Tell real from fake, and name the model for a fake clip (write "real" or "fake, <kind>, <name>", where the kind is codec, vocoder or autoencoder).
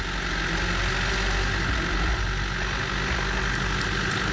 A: real